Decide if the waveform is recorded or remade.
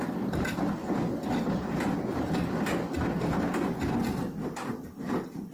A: recorded